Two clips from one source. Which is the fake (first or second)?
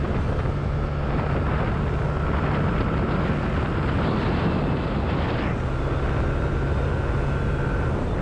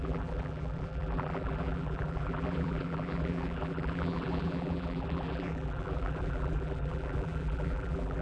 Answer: second